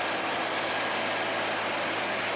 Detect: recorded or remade recorded